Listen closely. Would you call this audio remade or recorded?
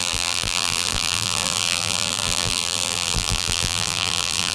remade